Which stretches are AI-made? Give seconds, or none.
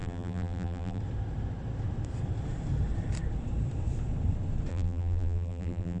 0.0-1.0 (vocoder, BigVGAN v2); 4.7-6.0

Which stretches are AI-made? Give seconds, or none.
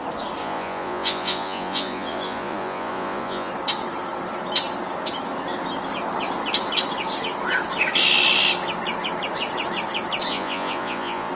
0.4-3.5 (vocoder, Vocos); 10.3-11.3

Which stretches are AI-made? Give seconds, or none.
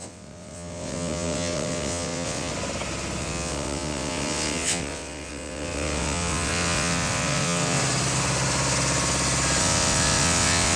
0.0-2.5 (vocoder, WaveNeXt); 3.2-7.8; 9.6-10.8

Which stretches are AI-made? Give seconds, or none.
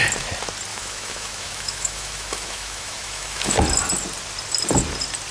0.7-3.6 (autoencoder, DAC-VAE)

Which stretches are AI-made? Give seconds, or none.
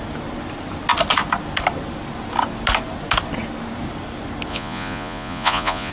4.5-5.9 (vocoder, Vocos)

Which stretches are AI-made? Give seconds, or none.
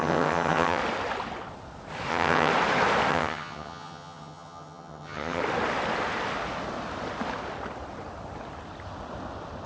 0.0-0.8 (vocoder, HiFi-GAN); 2.1-2.5; 3.1-5.4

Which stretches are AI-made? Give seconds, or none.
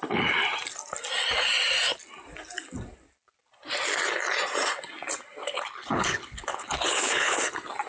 5.4-7.4 (codec, HILCodec)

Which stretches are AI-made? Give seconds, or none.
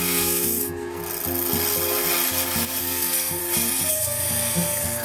0.0-1.0 (codec, SNAC); 2.8-3.4; 3.9-5.0